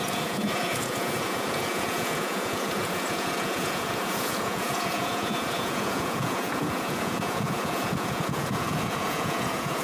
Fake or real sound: fake